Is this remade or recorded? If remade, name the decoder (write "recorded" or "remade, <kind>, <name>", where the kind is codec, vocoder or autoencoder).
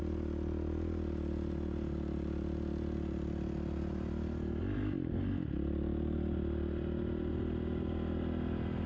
recorded